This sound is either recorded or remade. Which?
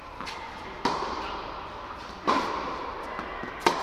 recorded